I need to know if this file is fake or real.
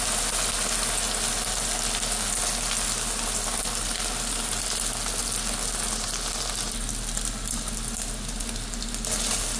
real